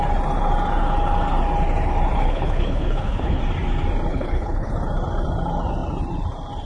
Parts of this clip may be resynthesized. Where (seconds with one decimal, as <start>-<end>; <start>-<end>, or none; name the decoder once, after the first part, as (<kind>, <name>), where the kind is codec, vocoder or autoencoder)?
2.2-3.4 (codec, HILCodec); 4.1-4.7